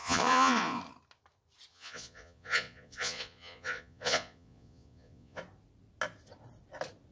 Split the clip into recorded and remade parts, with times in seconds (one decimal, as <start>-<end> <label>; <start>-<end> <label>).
0.0-0.8 remade; 0.8-1.7 recorded; 1.7-5.4 remade; 5.4-7.1 recorded